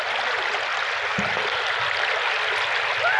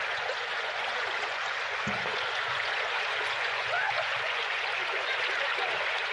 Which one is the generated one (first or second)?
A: second